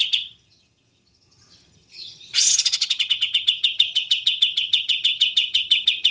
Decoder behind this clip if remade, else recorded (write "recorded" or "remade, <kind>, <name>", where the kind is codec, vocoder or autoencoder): remade, vocoder, HiFi-GAN